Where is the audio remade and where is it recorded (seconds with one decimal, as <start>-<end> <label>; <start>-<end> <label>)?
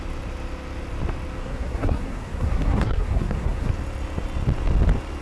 0.0-1.4 recorded; 1.4-3.7 remade; 3.7-5.2 recorded